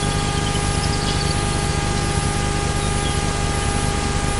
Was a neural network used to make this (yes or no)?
no